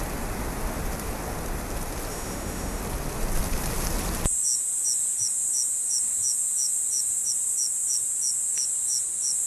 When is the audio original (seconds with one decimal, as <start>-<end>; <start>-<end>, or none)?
0.0-2.1; 2.8-9.5

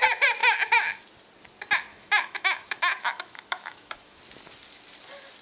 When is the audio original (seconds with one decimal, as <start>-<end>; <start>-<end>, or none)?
0.0-0.4; 1.0-1.9; 4.2-5.4

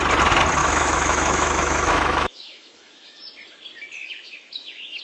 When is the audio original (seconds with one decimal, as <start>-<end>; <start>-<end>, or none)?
0.0-0.6; 3.2-4.0

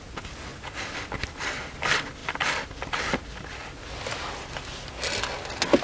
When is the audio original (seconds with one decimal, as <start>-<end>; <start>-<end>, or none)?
0.0-5.8